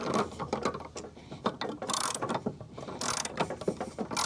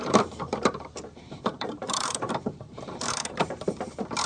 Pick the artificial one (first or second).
second